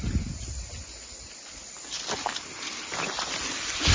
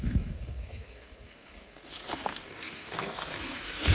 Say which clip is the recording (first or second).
first